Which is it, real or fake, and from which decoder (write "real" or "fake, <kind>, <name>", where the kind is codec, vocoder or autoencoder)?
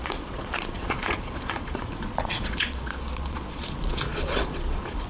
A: fake, vocoder, Vocos